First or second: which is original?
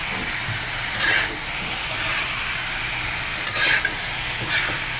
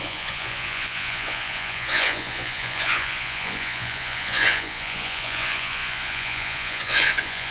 first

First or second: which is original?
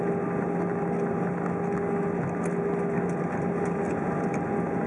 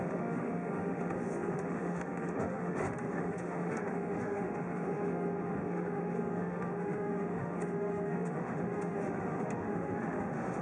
first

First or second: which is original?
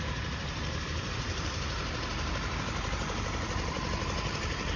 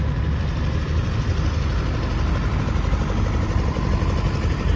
second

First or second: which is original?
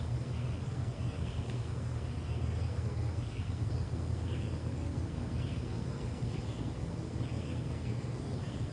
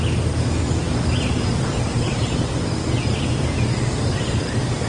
second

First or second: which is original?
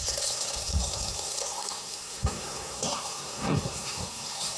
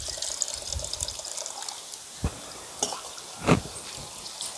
second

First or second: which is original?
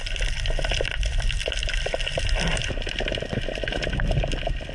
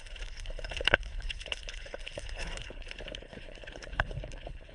first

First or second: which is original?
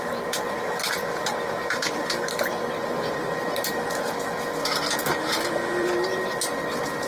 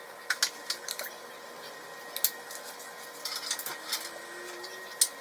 second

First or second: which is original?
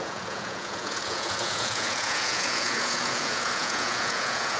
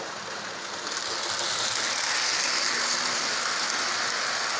second